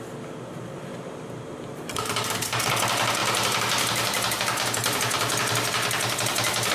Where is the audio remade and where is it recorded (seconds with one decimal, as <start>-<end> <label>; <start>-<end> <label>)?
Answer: 0.0-0.9 recorded; 0.9-2.7 remade; 2.7-6.7 recorded